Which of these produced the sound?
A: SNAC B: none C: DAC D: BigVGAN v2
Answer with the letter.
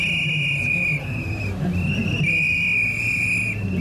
B